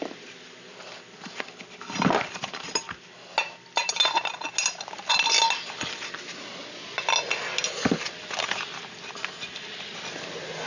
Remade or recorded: recorded